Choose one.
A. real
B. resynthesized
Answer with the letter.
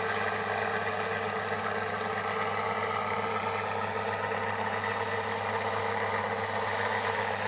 A